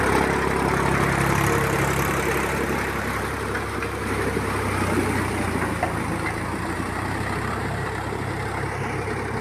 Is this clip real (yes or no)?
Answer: yes